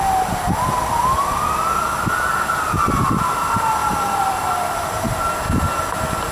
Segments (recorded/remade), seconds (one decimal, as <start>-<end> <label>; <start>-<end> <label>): 0.0-3.8 recorded; 3.8-5.3 remade; 5.3-6.3 recorded